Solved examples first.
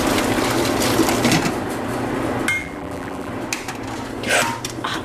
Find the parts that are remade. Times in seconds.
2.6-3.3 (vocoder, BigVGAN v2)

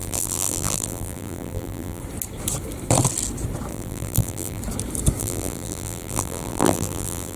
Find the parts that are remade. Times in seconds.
0.0-2.0 (vocoder, BigVGAN v2); 3.7-4.6; 5.2-7.4

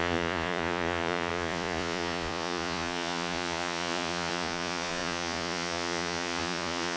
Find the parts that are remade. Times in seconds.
0.0-7.0 (vocoder, Vocos)

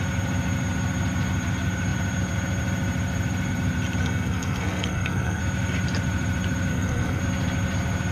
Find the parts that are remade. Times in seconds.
4.0-5.4 (codec, SNAC); 6.7-7.2